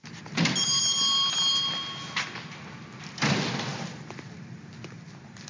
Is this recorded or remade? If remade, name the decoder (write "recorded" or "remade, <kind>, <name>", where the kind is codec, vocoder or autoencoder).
recorded